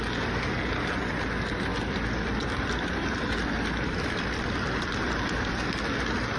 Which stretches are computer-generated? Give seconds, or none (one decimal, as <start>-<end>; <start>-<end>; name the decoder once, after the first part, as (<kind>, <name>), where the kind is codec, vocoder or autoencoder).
1.7-5.5 (vocoder, BigVGAN v2)